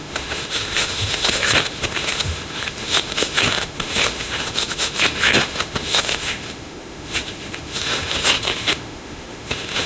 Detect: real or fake fake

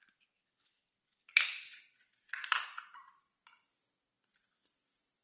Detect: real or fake real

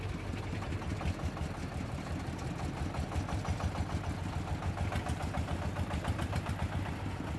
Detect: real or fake real